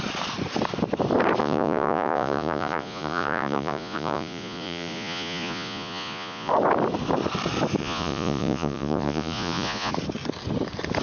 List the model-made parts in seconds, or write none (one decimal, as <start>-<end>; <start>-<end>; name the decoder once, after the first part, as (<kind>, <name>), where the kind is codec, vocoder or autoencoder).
1.4-6.5 (vocoder, Vocos); 7.8-9.9